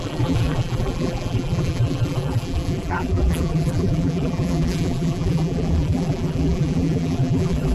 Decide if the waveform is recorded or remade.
remade